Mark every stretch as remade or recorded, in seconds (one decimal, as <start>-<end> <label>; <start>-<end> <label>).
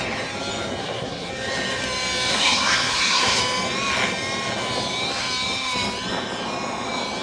0.0-0.8 recorded; 0.8-1.3 remade; 1.3-2.3 recorded; 2.3-3.4 remade; 3.4-7.2 recorded